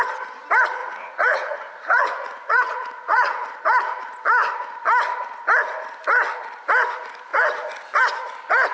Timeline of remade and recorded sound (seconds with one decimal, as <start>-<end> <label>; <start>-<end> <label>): 0.0-0.8 recorded; 0.8-3.6 remade; 3.6-8.7 recorded